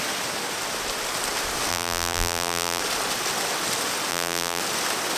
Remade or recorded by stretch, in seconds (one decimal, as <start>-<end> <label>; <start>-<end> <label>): 0.0-1.7 recorded; 1.7-2.8 remade; 2.8-4.1 recorded; 4.1-4.6 remade; 4.6-5.2 recorded